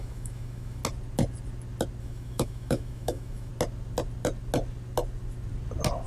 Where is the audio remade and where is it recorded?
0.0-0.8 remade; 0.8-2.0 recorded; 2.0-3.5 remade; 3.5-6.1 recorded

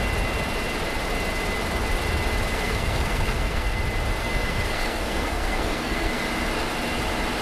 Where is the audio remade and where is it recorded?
0.0-2.5 recorded; 2.5-3.8 remade; 3.8-4.2 recorded; 4.2-6.2 remade; 6.2-7.4 recorded

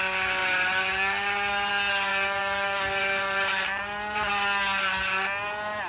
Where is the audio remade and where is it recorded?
0.0-2.1 recorded; 2.1-4.3 remade; 4.3-5.9 recorded